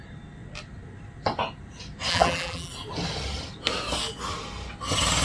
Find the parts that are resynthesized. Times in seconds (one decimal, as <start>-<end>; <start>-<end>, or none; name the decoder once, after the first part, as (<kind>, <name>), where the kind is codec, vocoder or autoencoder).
2.1-2.7 (vocoder, BigVGAN v2)